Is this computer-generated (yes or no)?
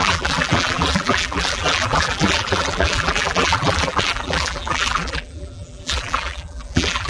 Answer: yes